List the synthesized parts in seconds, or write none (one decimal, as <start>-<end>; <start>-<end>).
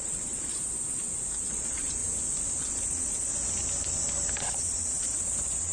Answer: 0.0-0.5; 1.5-2.0; 2.6-3.3; 4.4-5.7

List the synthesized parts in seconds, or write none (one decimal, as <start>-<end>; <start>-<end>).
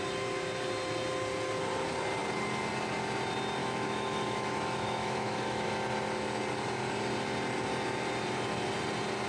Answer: 3.6-5.7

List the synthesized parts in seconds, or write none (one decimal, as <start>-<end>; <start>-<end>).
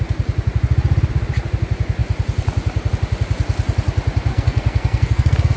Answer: 4.3-5.6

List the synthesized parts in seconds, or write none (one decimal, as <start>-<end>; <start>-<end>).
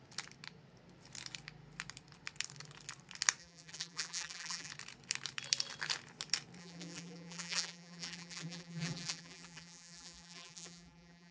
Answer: 3.4-4.7; 6.6-11.3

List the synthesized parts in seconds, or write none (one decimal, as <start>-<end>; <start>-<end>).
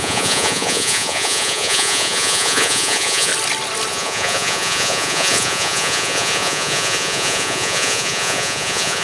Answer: 0.0-3.3; 3.9-9.0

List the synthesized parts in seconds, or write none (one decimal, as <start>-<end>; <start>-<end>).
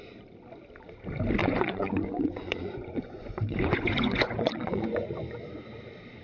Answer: 1.4-5.1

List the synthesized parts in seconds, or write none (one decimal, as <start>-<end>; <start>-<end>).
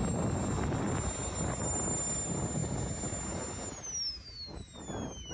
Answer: none